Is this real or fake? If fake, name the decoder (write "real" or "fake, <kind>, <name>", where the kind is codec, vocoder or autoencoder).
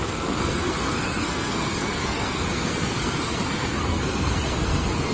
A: fake, codec, SNAC